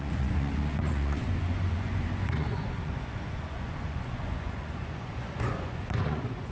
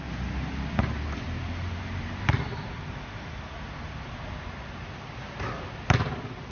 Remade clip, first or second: first